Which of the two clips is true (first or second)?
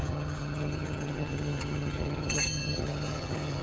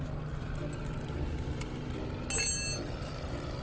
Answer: second